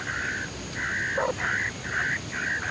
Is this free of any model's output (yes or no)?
yes